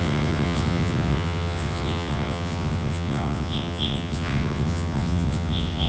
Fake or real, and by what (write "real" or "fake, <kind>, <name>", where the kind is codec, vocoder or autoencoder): fake, vocoder, WaveNeXt